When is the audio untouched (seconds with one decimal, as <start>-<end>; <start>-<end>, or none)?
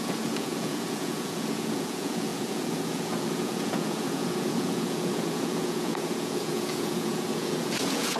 none